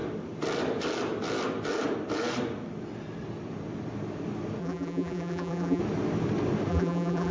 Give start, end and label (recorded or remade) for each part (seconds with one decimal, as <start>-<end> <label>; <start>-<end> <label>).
0.0-4.6 recorded; 4.6-5.8 remade; 5.8-6.7 recorded; 6.7-7.3 remade